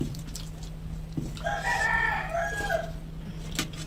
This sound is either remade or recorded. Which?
recorded